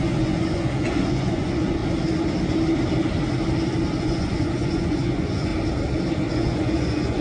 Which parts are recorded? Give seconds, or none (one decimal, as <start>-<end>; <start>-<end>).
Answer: 1.8-4.0; 5.5-6.3